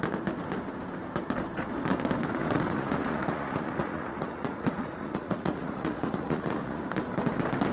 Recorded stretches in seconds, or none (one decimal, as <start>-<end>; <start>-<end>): 0.0-2.4; 6.8-7.7